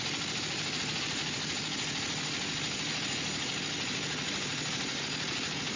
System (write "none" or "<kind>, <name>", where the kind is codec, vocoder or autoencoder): none